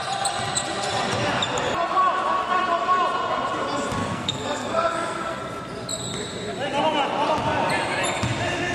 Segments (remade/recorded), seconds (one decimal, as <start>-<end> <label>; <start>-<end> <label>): 0.0-4.0 recorded; 4.0-5.4 remade; 5.4-8.7 recorded